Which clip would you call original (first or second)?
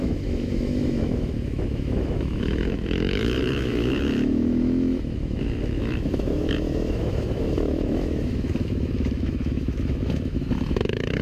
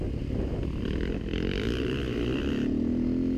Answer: second